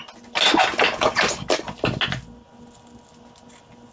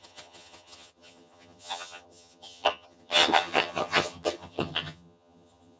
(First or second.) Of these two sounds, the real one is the first